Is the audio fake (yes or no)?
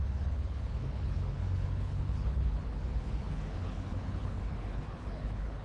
yes